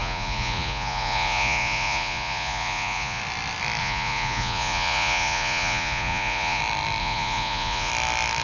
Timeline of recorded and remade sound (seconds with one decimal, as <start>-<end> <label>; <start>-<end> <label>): 0.0-3.2 remade; 3.2-3.8 recorded; 3.8-6.6 remade; 6.6-7.0 recorded; 7.0-7.9 remade; 7.9-8.4 recorded